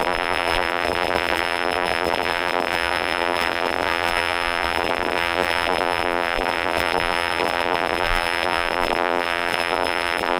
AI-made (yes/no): yes